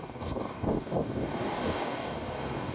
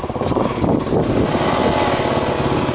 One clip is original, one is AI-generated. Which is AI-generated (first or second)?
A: first